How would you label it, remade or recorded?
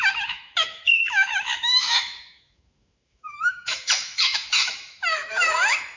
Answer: remade